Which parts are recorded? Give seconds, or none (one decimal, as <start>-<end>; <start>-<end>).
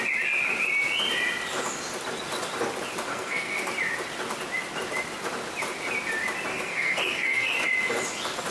0.0-3.1; 3.7-6.5; 7.6-8.5